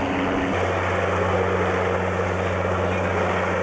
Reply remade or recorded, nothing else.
recorded